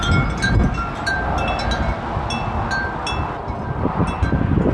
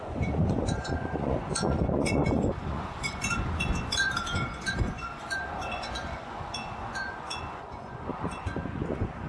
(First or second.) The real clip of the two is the first